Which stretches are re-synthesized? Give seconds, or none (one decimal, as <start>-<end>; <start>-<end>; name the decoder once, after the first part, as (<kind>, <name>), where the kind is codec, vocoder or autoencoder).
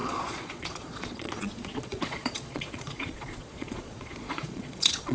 0.0-5.1 (vocoder, Vocos)